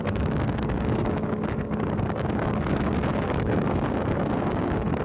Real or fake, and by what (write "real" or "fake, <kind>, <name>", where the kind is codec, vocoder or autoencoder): fake, codec, DAC